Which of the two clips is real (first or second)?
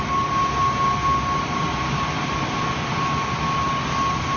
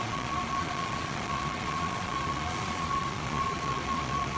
first